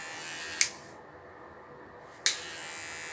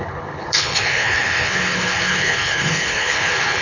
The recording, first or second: first